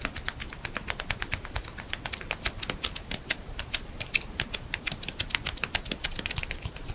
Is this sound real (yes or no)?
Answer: yes